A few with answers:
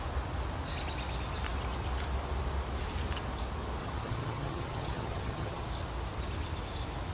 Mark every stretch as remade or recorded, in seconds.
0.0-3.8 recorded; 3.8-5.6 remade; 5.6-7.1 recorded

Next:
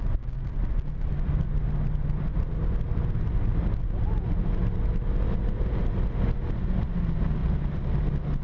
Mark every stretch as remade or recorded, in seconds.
0.0-8.4 recorded

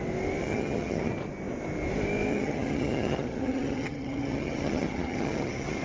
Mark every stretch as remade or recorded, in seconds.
0.0-0.4 recorded; 0.4-1.1 remade; 1.1-2.3 recorded; 2.3-5.8 remade

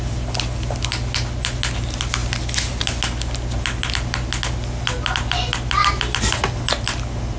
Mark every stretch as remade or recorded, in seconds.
0.0-7.4 recorded

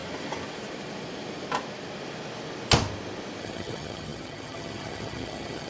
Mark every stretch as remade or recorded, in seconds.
0.0-3.4 recorded; 3.4-5.7 remade

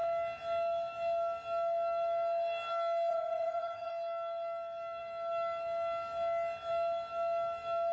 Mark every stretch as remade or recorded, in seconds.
0.0-3.1 recorded; 3.1-3.9 remade; 3.9-7.9 recorded